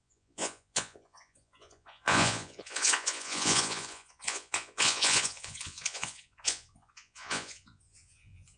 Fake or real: fake